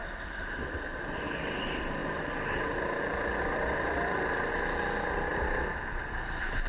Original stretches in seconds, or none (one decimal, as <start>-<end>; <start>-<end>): 0.7-2.0; 4.5-5.3; 5.8-6.7